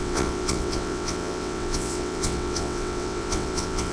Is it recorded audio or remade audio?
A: remade